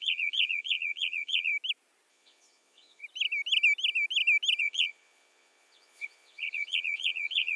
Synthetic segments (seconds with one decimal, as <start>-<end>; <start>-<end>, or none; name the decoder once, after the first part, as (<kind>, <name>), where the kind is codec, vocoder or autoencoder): 0.0-1.5 (vocoder, Vocos); 2.1-3.0; 4.6-7.6